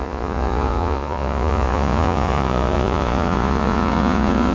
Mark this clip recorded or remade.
remade